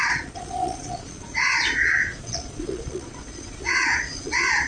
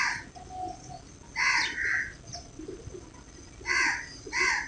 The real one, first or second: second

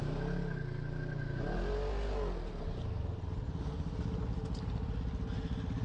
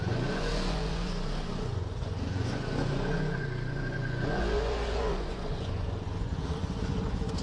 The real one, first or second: first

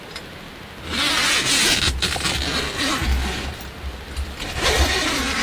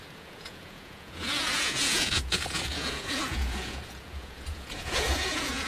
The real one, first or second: first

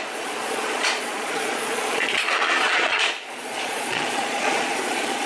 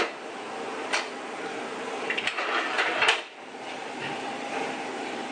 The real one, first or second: second